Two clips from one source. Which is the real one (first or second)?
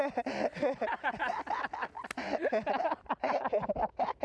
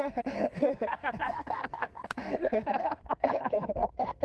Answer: first